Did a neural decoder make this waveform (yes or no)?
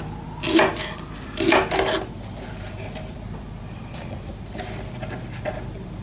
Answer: no